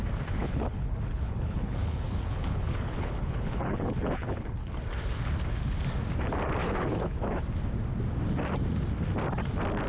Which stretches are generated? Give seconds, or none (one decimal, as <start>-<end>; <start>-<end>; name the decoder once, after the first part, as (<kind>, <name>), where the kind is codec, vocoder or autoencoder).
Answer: 0.4-4.7 (codec, HILCodec); 6.6-7.4